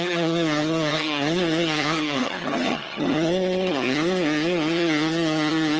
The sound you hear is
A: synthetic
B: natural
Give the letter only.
A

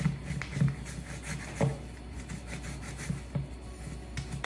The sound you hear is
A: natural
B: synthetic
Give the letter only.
A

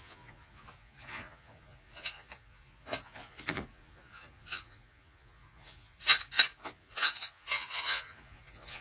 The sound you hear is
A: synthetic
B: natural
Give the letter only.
A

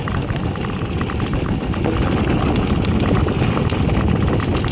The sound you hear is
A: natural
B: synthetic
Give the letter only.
A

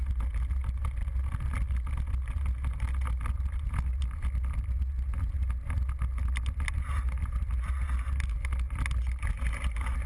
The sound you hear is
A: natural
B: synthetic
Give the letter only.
A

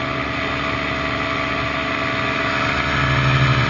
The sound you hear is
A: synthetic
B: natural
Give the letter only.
B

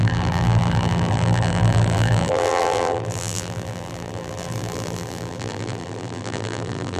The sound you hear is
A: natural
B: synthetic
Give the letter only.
B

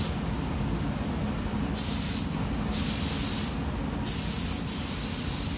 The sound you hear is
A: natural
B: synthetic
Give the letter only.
A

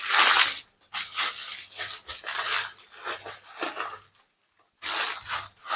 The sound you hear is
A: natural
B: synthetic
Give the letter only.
A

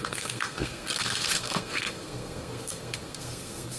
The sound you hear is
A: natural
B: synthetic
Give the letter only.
B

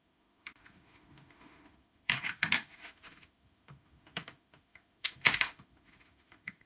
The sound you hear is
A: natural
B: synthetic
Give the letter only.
B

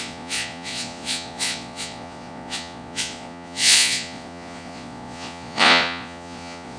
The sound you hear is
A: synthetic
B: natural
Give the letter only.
A